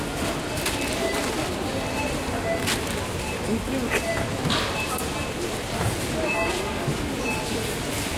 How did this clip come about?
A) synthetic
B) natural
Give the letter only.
B